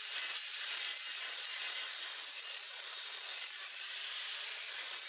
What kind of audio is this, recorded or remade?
remade